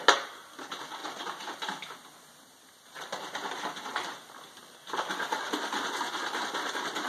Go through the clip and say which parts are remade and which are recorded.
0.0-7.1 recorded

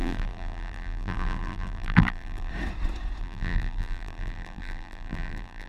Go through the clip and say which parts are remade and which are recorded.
0.0-2.5 remade; 2.5-3.2 recorded; 3.2-5.7 remade

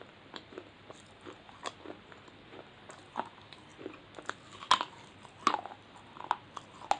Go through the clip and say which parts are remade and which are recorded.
0.0-7.0 recorded